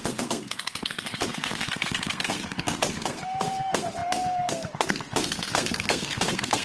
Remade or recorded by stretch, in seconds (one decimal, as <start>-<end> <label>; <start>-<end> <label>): 0.0-6.6 remade